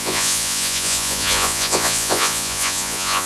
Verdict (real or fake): fake